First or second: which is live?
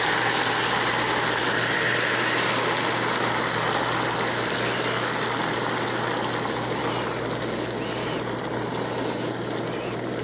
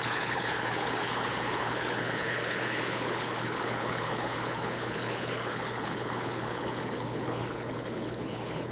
first